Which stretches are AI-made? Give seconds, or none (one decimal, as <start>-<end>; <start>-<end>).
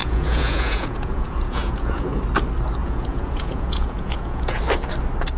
0.0-2.2; 2.8-4.6